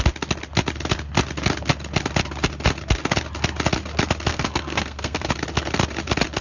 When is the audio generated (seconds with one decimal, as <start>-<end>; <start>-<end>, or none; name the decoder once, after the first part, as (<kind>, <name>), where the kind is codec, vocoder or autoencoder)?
4.3-5.3 (codec, SNAC)